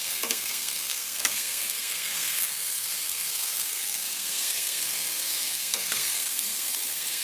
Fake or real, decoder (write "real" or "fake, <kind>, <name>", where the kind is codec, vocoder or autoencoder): fake, codec, SNAC